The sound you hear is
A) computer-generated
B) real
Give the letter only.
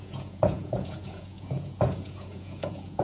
A